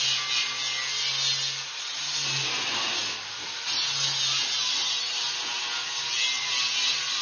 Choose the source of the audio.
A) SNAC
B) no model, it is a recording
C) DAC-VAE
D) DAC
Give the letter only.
B